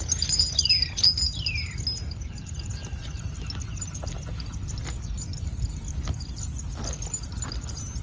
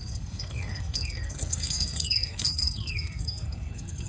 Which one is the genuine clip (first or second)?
first